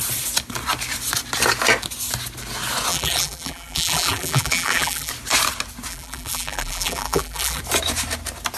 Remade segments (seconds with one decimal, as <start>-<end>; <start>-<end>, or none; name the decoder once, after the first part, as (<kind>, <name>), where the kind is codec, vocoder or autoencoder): 2.9-5.1 (vocoder, BigVGAN v2); 5.9-7.6